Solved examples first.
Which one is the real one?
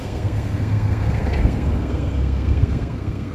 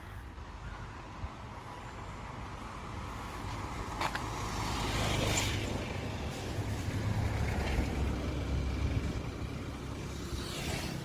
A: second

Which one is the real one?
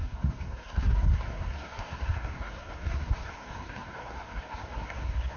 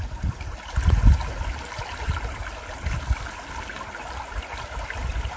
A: second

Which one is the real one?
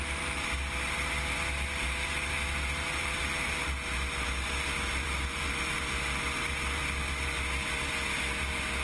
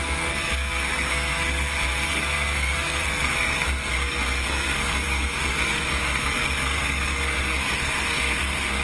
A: first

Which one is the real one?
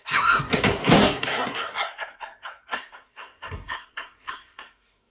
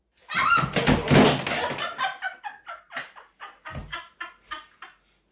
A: second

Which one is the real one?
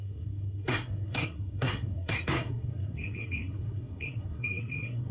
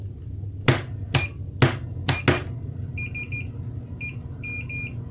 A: second